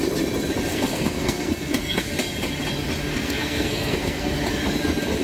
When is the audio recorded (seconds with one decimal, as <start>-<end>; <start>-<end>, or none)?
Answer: 0.0-0.7; 2.1-3.1; 4.3-5.2